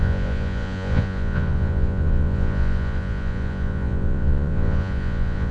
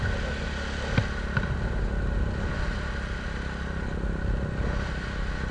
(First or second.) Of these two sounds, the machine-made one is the first